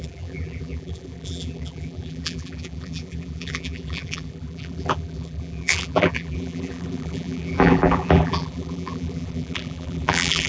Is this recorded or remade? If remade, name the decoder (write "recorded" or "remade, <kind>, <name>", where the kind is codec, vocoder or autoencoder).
remade, vocoder, BigVGAN v2